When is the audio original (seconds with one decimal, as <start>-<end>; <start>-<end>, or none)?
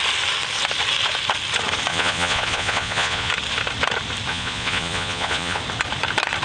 0.0-1.9; 3.3-4.3; 5.6-6.4